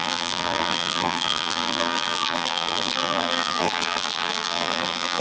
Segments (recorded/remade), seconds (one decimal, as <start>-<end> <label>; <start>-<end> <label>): 0.0-5.2 remade